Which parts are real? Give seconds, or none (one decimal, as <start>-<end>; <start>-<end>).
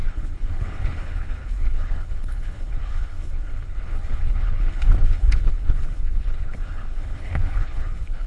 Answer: none